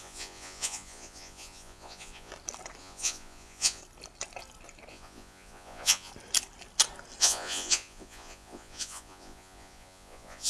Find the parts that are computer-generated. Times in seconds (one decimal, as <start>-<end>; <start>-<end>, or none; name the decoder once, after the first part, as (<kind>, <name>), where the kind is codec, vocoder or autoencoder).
0.0-2.3 (vocoder, Vocos); 2.8-3.8; 4.9-6.1; 7.2-10.5